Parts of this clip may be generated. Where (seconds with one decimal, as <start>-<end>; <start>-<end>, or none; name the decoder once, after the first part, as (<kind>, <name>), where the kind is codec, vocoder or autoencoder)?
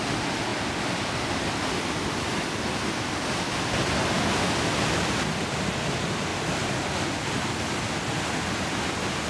none